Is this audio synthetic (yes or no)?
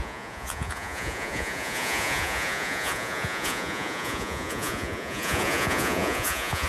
yes